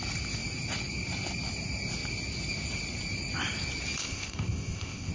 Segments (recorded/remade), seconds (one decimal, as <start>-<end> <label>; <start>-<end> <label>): 0.0-4.0 recorded; 4.0-5.1 remade